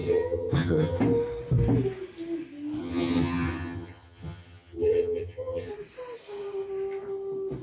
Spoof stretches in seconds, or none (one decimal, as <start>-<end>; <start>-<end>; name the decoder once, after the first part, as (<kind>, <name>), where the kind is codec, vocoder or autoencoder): 0.0-1.0 (vocoder, HiFi-GAN); 2.8-5.7